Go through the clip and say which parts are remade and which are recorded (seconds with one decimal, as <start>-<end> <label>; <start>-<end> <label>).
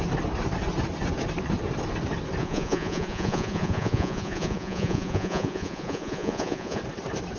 0.0-2.4 recorded; 2.4-6.8 remade; 6.8-7.4 recorded